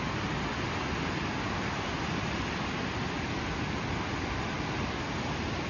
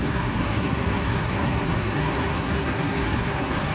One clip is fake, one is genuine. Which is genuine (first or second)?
first